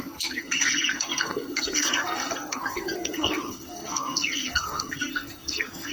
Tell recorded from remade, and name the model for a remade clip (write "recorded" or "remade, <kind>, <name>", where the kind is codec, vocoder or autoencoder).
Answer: remade, codec, SNAC